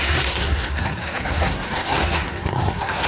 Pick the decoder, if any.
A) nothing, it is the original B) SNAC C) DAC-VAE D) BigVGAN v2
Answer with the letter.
B